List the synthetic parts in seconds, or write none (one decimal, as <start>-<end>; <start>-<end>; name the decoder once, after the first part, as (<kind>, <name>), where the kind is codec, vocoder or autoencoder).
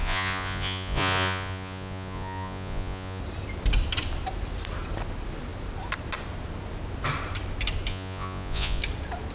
0.0-3.2 (vocoder, Vocos); 7.9-8.8